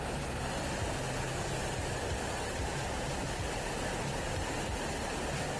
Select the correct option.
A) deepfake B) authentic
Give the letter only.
B